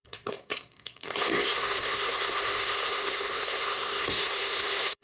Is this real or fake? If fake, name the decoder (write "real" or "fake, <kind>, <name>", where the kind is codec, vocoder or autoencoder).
fake, codec, SNAC